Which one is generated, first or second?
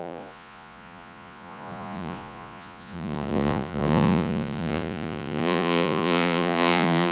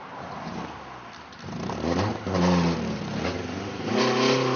first